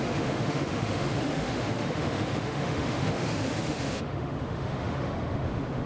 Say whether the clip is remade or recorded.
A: remade